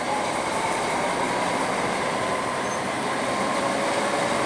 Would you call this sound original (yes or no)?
no